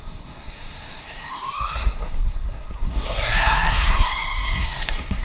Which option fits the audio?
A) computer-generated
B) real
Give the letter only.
A